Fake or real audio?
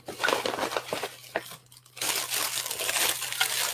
real